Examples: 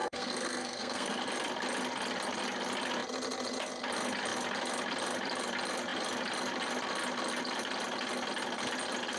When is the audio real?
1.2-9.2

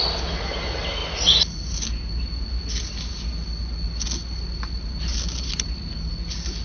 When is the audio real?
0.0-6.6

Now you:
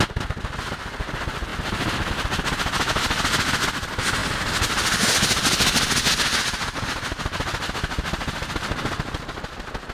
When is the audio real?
0.0-9.9